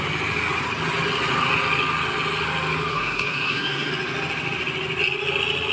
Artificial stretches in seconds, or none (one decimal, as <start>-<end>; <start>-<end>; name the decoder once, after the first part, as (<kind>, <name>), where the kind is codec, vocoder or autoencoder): 2.9-3.9 (codec, SNAC)